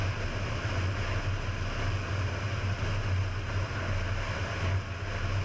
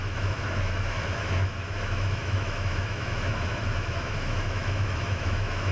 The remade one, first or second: second